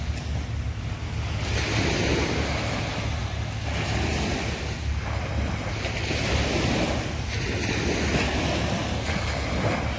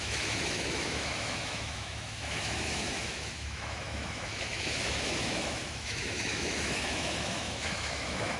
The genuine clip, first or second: first